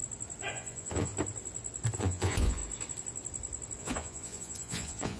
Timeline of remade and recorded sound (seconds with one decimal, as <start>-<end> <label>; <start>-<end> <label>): 0.0-0.5 recorded; 0.5-1.1 remade; 1.1-2.0 recorded; 2.0-2.6 remade; 2.6-3.8 recorded; 3.8-5.2 remade